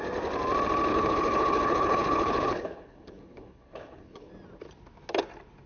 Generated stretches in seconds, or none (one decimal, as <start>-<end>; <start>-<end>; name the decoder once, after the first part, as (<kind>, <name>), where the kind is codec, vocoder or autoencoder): 0.9-4.3 (codec, HILCodec)